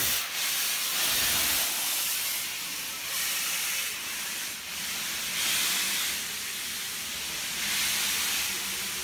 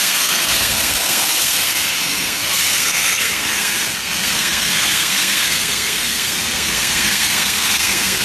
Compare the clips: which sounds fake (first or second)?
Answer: second